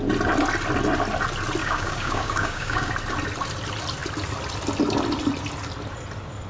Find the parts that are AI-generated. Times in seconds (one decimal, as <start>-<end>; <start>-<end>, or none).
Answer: 1.6-2.9